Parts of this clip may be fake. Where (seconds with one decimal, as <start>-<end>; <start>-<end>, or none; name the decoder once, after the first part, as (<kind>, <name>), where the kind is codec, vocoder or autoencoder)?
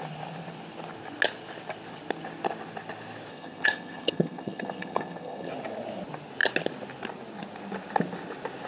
3.3-5.5 (vocoder, HiFi-GAN)